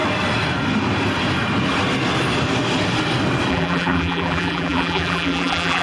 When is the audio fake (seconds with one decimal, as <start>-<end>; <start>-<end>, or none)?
3.5-5.8